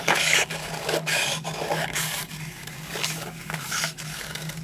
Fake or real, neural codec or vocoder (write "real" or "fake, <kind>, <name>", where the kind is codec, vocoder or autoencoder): fake, codec, DAC